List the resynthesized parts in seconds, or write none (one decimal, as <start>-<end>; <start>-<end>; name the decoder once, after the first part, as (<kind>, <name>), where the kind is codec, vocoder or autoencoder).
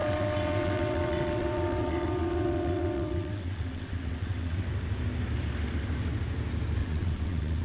0.0-4.6 (vocoder, WaveNeXt); 6.8-7.6